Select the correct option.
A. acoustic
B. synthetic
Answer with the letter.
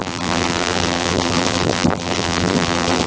B